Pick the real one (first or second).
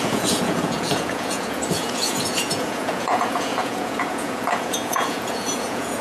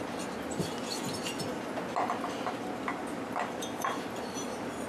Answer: second